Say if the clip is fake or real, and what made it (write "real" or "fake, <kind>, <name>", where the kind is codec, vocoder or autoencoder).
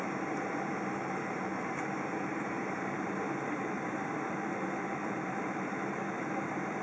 fake, vocoder, BigVGAN v2